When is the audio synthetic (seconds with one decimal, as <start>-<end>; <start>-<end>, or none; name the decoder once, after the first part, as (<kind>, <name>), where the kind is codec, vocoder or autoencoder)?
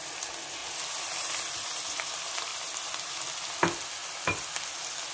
2.5-3.3 (vocoder, BigVGAN v2); 4.0-4.5